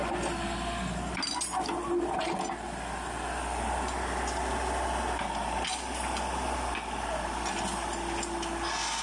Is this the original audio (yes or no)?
yes